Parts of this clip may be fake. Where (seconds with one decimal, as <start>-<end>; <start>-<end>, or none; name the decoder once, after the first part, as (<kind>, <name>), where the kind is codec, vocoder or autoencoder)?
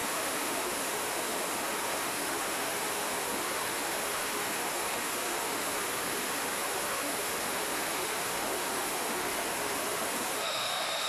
0.0-11.1 (autoencoder, DAC-VAE)